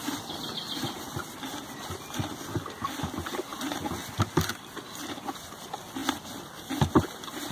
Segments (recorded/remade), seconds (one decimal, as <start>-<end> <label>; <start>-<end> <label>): 0.0-7.5 recorded